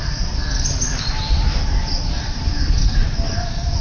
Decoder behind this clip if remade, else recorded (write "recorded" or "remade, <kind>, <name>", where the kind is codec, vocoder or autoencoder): recorded